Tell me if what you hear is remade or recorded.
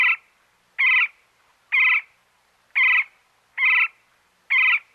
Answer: recorded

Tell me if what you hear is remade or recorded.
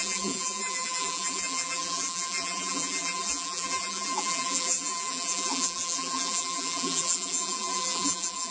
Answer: remade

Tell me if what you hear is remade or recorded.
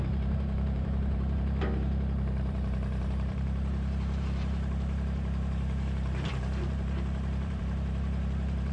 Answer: remade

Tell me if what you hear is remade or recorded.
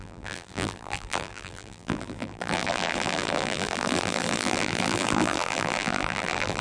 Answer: remade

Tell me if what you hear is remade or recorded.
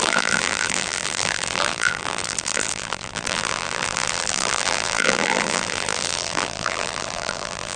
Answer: remade